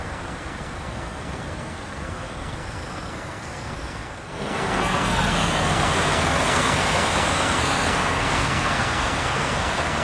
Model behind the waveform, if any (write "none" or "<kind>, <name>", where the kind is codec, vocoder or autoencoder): codec, SNAC